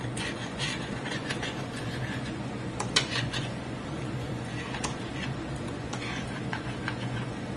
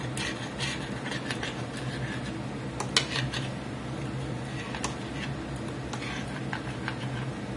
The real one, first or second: second